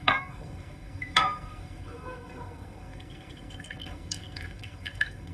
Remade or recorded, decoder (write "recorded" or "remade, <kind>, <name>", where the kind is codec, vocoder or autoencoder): remade, codec, SNAC